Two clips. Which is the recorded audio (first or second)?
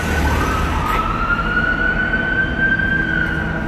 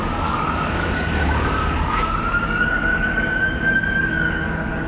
first